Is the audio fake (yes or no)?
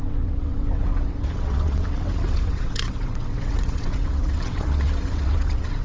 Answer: yes